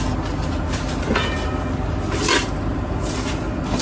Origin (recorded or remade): recorded